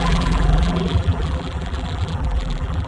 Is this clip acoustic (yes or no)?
no